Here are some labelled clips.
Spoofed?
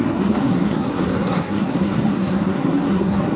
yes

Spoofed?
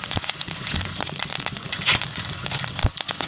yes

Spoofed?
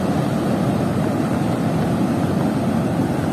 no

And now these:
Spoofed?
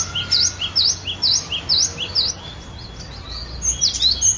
no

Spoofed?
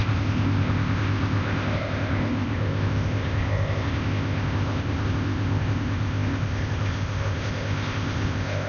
yes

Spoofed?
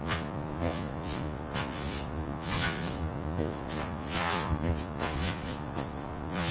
yes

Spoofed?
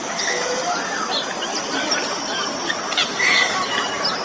no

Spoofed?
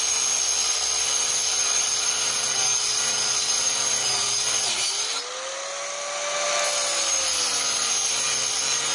no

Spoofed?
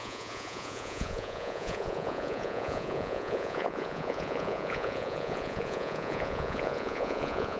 yes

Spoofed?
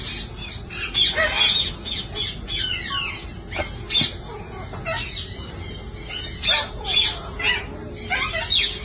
no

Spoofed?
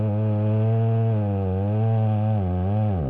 no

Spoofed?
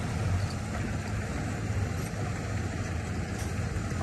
no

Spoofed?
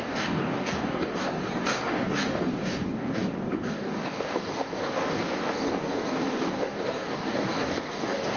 yes